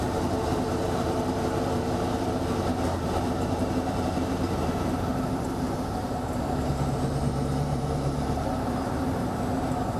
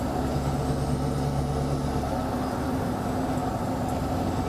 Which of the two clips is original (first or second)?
second